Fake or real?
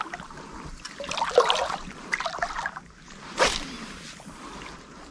fake